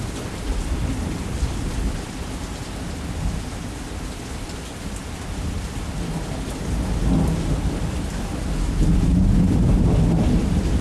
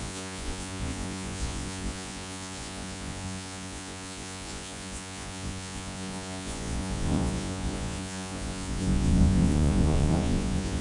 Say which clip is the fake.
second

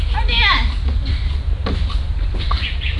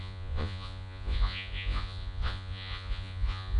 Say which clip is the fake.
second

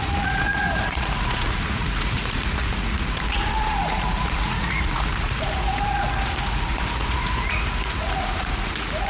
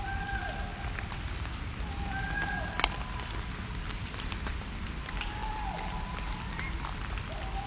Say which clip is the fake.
first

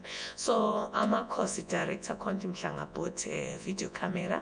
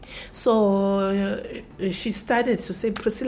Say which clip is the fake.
first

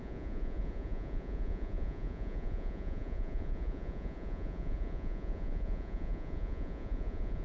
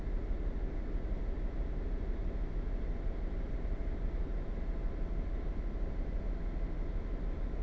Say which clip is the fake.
first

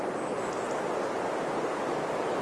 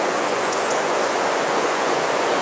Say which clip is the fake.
second